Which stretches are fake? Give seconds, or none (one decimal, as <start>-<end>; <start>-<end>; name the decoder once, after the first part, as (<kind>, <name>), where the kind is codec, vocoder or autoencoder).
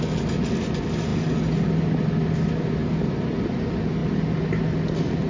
none